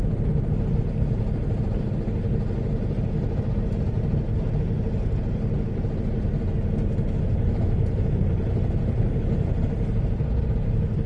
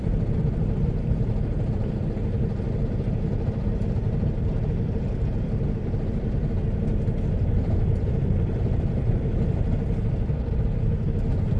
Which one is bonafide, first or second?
first